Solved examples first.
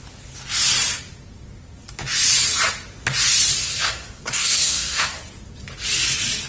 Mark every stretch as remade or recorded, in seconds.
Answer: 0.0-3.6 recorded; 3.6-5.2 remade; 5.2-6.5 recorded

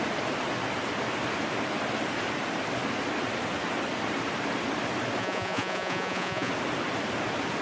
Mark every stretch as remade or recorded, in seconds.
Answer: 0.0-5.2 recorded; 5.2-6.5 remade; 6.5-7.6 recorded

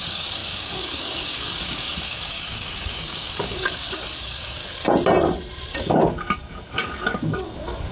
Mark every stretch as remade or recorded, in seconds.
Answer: 0.0-4.6 remade; 4.6-5.8 recorded; 5.8-7.9 remade

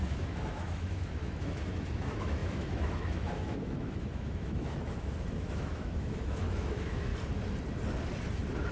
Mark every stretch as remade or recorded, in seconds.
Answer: 0.0-7.1 remade; 7.1-8.7 recorded

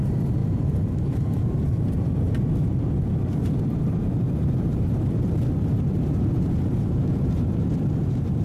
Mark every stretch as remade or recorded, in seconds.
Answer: 0.0-0.4 recorded; 0.4-2.2 remade; 2.2-3.2 recorded; 3.2-8.4 remade